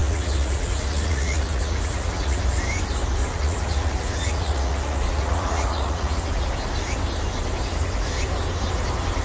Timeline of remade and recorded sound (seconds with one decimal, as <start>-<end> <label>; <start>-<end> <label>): 0.0-2.4 remade; 2.4-3.2 recorded; 3.2-6.5 remade; 6.5-9.2 recorded

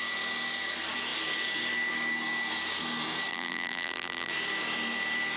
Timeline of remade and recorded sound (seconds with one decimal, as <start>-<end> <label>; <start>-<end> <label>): 0.0-3.3 recorded; 3.3-4.3 remade; 4.3-5.4 recorded

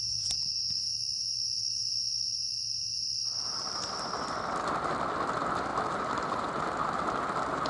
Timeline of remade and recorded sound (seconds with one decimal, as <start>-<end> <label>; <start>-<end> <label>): 0.0-5.7 recorded; 5.7-6.4 remade; 6.4-7.7 recorded

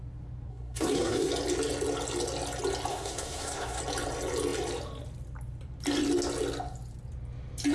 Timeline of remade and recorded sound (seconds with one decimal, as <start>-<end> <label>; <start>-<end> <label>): 0.0-0.5 recorded; 0.5-1.3 remade; 1.3-2.9 recorded; 2.9-3.8 remade; 3.8-7.7 recorded